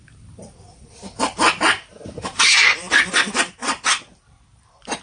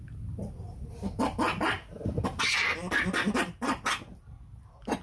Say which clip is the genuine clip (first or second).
second